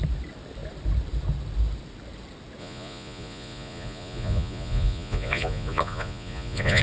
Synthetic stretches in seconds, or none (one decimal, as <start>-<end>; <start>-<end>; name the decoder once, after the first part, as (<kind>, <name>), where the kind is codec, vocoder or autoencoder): 2.6-6.8 (vocoder, Vocos)